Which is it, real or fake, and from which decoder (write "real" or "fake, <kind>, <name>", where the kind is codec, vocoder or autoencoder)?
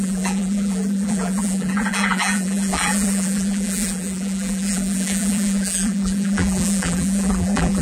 fake, vocoder, BigVGAN v2